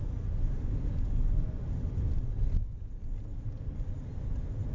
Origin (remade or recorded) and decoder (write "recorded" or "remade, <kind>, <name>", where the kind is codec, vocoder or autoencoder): recorded